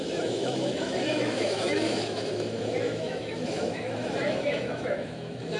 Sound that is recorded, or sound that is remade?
remade